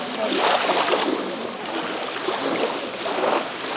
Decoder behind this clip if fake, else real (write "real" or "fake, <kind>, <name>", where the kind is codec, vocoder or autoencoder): real